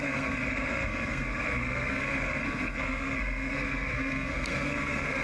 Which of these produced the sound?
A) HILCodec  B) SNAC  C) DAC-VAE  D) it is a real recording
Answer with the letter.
B